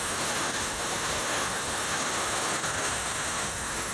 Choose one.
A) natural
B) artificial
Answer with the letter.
B